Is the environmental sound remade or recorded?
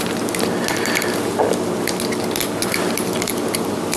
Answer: recorded